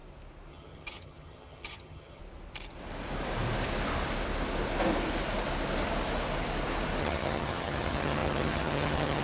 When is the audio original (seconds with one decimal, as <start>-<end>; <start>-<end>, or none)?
0.0-0.5; 2.2-7.0